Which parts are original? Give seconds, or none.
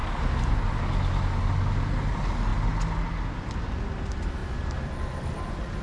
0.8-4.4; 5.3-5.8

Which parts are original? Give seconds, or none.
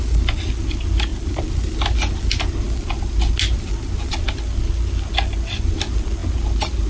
0.0-6.9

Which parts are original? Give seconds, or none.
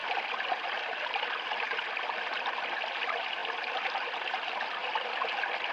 0.0-5.7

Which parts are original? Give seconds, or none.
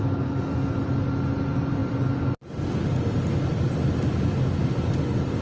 0.0-5.4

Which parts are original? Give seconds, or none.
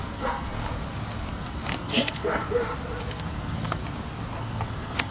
0.6-1.3; 2.4-3.1; 3.8-4.4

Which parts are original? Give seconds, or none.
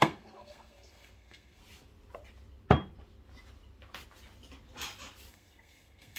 1.6-5.3